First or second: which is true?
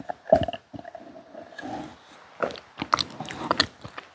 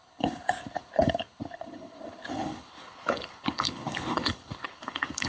first